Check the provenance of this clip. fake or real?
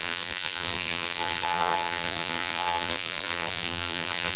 fake